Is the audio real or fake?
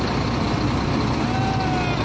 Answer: real